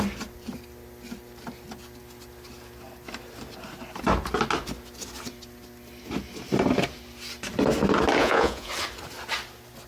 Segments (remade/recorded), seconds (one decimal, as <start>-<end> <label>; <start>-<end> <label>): 0.0-8.2 recorded; 8.2-8.7 remade; 8.7-9.9 recorded